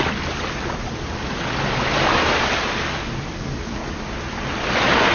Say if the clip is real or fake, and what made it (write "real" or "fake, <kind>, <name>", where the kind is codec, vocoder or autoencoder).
real